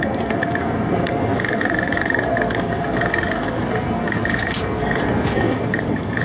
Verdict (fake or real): fake